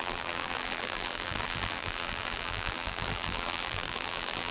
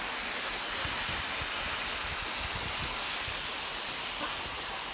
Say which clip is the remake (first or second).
first